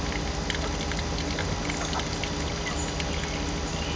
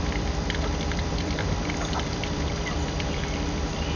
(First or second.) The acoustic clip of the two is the first